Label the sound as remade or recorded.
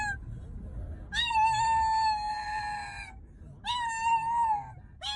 recorded